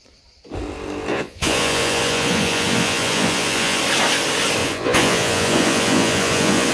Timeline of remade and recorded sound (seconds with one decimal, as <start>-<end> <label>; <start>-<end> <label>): 0.0-1.1 recorded; 1.1-3.8 remade; 3.8-4.6 recorded; 4.6-6.7 remade